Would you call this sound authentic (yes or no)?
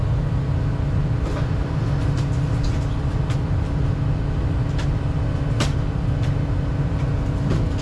yes